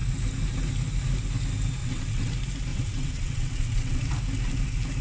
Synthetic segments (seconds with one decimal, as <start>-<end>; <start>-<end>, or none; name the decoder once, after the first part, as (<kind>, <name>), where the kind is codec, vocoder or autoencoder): 1.8-2.3 (vocoder, WaveNeXt); 2.7-4.1